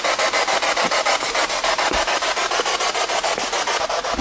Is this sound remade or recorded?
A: recorded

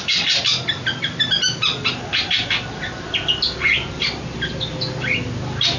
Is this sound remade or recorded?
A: recorded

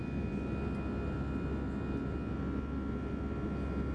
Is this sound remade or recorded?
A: recorded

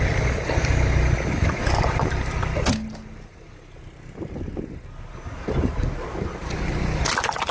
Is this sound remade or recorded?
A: recorded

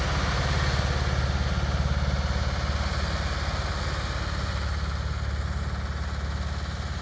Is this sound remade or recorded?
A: recorded